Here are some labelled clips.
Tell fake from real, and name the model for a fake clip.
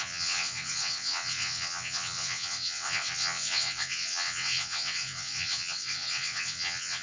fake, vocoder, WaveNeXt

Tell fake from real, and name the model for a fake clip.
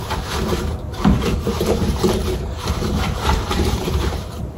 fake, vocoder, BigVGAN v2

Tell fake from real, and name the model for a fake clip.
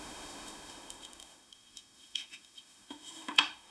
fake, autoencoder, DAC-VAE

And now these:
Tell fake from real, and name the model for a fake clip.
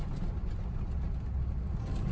real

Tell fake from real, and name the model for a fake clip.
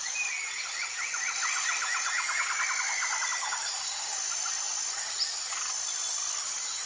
real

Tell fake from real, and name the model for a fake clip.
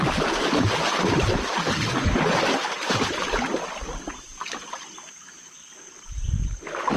real